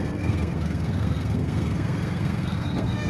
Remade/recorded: remade